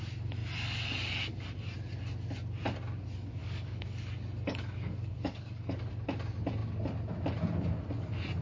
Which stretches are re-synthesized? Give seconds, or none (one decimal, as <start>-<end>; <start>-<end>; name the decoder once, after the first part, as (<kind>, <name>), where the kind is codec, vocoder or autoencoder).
3.4-5.9 (codec, DAC)